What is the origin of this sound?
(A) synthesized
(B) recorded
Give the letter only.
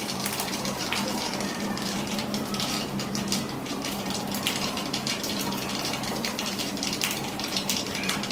A